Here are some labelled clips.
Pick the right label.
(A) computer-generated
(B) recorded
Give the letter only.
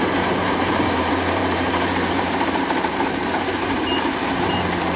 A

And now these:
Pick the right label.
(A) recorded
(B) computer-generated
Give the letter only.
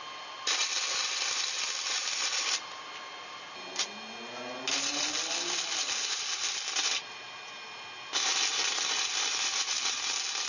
A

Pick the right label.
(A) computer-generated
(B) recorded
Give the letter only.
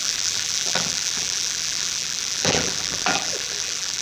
A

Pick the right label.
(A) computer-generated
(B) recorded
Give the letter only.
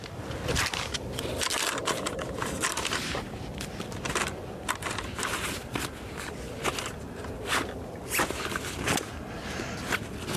B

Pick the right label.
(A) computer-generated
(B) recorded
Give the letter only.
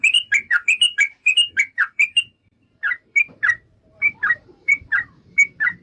A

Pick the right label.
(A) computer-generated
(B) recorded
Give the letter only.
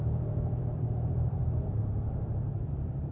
A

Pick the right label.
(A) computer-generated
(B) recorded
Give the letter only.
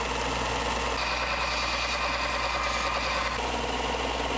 B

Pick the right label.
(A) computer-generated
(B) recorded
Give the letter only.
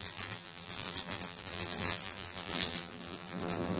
A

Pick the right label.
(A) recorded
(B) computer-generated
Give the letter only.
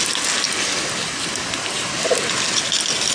A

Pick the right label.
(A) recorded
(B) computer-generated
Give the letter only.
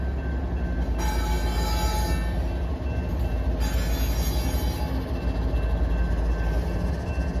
A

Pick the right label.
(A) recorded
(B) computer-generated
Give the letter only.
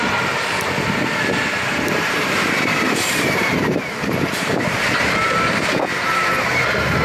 B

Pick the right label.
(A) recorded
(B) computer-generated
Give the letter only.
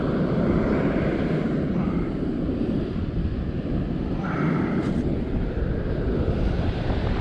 B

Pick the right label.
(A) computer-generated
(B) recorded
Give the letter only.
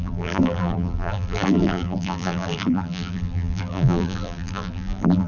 A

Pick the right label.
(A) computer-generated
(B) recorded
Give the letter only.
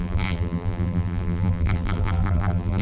A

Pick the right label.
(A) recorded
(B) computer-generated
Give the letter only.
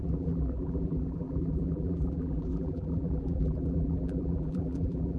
B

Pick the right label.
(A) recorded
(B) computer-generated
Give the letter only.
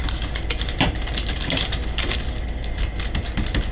A